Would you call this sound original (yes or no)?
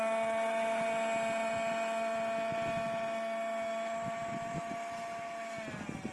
yes